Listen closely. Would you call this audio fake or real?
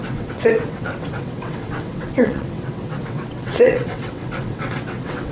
fake